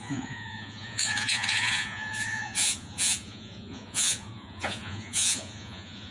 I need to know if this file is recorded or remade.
remade